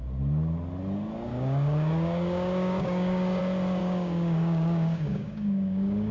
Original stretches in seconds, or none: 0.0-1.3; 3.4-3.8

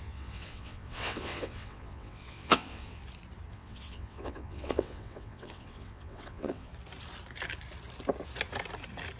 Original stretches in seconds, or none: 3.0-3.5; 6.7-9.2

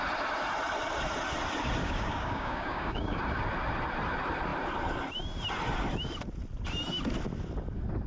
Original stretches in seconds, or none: 0.0-1.8; 3.2-8.1

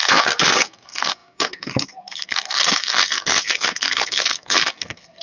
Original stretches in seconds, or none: none

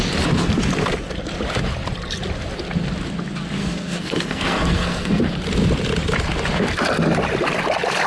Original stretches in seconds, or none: 0.0-3.6; 5.2-8.1

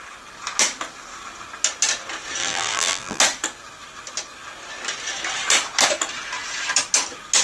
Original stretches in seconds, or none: 0.0-2.4; 3.2-7.4

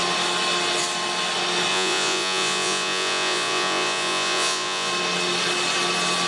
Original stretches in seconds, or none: 0.0-1.7; 4.9-6.3

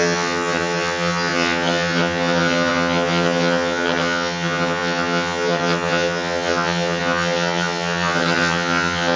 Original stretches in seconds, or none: none